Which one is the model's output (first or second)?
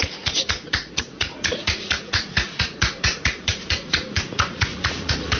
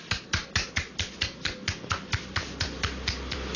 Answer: first